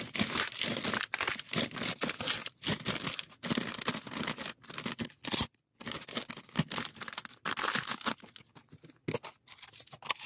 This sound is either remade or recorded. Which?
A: recorded